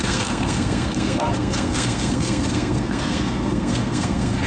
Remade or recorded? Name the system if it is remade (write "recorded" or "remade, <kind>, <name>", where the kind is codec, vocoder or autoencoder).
remade, codec, SNAC